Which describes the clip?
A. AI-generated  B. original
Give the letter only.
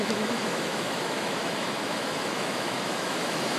A